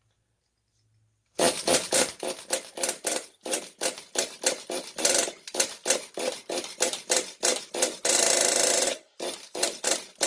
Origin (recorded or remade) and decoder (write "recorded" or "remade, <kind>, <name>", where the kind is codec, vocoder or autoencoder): recorded